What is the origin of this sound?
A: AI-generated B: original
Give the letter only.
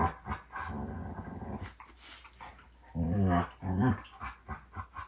B